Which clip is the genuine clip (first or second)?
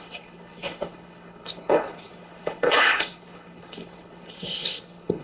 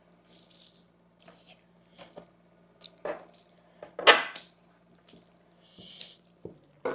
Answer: second